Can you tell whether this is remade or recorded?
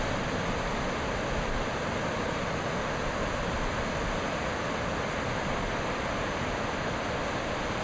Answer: recorded